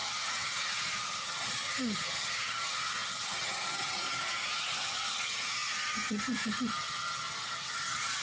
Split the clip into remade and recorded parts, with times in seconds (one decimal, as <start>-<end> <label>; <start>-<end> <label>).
0.0-8.2 remade